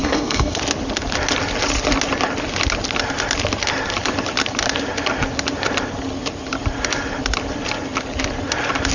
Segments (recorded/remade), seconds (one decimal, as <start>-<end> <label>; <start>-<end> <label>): 0.0-0.6 remade; 0.6-8.9 recorded